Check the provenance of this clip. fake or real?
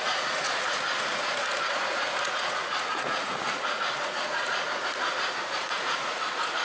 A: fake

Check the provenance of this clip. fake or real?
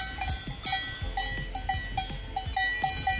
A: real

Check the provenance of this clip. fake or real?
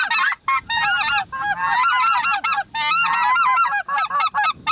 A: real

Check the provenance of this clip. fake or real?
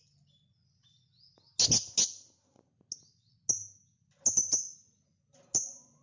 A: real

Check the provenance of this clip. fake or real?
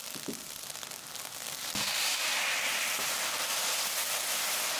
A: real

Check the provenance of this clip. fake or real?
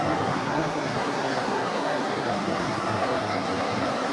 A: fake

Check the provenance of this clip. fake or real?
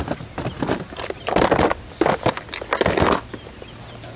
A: real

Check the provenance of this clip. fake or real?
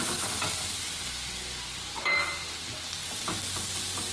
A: real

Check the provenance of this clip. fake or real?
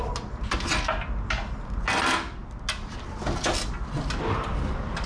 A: real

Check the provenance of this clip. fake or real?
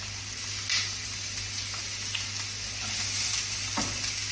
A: real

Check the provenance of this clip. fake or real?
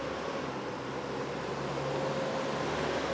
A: real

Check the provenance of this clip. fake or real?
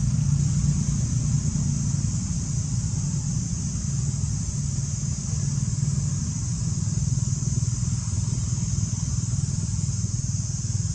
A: real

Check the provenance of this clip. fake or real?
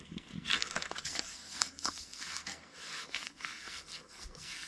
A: fake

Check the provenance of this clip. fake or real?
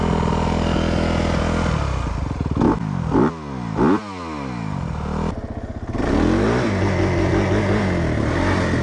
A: real